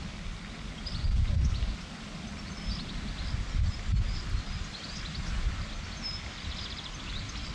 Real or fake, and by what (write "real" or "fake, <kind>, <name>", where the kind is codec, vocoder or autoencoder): real